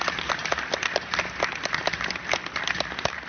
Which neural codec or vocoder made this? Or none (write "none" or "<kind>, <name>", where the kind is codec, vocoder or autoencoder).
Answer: none